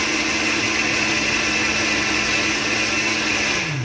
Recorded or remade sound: recorded